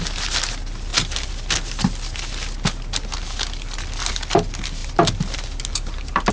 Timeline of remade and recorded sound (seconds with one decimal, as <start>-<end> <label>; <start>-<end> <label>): 0.0-6.3 recorded